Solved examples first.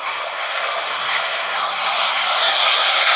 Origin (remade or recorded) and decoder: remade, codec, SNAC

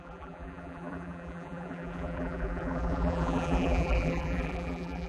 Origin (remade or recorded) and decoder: remade, vocoder, BigVGAN v2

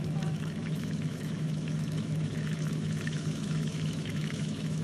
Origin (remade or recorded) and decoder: remade, autoencoder, DAC-VAE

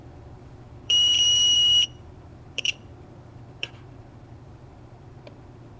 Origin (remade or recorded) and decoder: remade, vocoder, BigVGAN v2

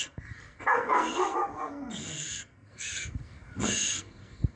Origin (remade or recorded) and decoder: remade, codec, SNAC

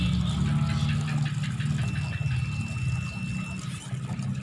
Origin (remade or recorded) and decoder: recorded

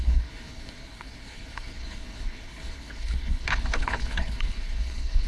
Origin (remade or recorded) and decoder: remade, codec, HILCodec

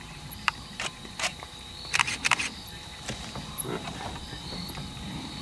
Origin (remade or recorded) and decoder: remade, vocoder, BigVGAN v2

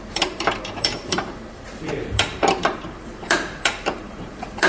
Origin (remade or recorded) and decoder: remade, vocoder, BigVGAN v2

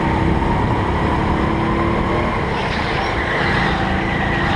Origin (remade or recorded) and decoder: recorded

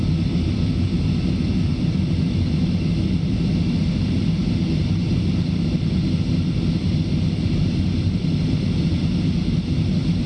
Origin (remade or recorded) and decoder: recorded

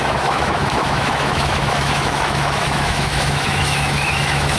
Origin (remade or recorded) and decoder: remade, autoencoder, DAC-VAE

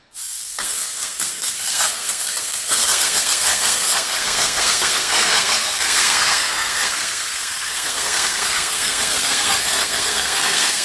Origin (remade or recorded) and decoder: remade, codec, SNAC